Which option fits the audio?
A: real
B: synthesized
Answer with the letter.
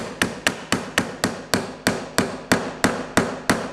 A